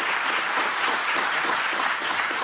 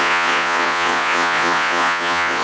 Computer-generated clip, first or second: second